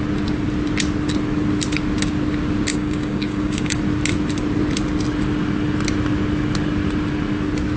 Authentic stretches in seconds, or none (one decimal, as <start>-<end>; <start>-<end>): 0.0-2.7; 3.8-7.8